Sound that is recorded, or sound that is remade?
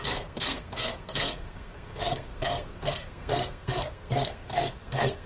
remade